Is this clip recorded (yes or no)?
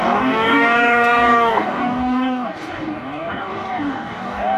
no